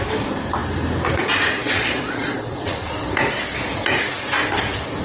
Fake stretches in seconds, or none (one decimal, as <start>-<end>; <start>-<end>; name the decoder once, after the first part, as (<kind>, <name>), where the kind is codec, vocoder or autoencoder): 1.6-3.0 (vocoder, Vocos)